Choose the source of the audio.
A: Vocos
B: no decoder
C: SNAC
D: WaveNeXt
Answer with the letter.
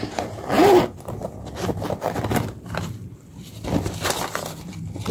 B